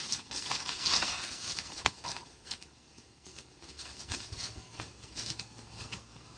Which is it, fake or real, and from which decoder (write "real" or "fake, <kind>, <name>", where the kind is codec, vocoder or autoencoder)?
fake, codec, SNAC